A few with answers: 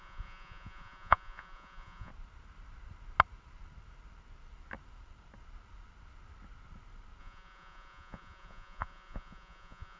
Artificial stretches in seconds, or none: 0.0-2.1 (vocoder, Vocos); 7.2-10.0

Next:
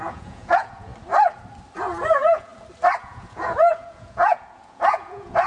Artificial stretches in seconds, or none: 0.0-0.9 (vocoder, Vocos); 2.1-2.5; 3.0-5.5

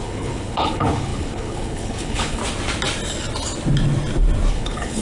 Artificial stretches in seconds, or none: 0.0-2.4 (codec, HILCodec); 4.5-5.0

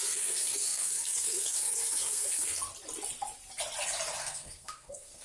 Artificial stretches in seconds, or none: 0.0-2.7 (codec, SNAC); 4.2-5.2

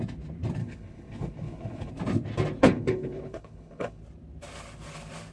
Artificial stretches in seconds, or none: 0.6-1.9 (codec, HILCodec); 2.6-4.0

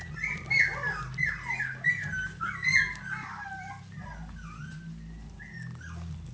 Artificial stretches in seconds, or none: none

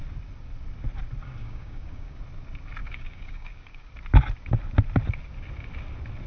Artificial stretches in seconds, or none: 1.4-2.2 (codec, DAC); 2.8-3.9

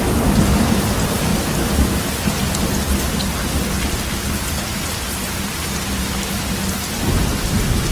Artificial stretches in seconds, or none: none